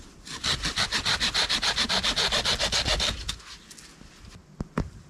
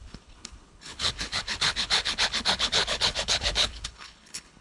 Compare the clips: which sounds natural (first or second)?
first